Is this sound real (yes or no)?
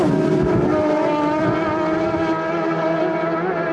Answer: yes